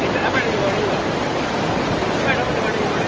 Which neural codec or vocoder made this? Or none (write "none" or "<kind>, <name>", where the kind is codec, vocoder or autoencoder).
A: none